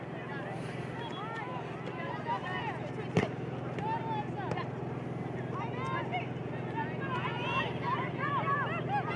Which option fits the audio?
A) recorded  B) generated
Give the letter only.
A